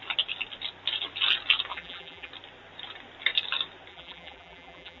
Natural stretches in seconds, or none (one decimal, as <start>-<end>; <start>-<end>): 0.0-1.7; 2.3-3.9